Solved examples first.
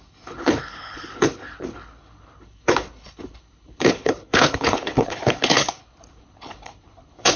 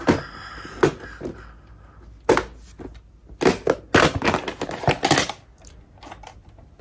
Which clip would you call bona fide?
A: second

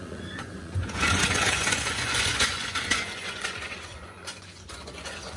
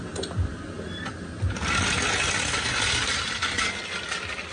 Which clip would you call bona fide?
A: second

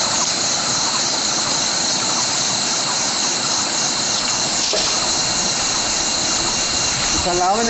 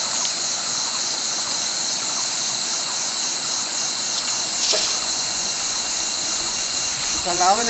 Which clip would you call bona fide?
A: first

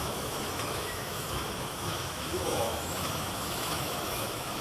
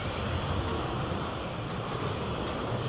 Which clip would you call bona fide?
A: second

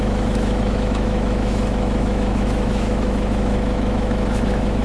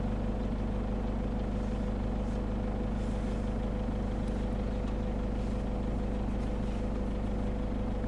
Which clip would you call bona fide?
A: second